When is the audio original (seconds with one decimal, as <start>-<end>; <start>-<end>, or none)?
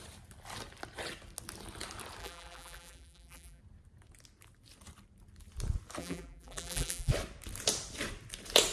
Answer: 0.0-2.2; 3.6-6.0; 7.1-8.7